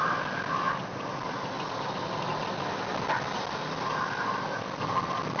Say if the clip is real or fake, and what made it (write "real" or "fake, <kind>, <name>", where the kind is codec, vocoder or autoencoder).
real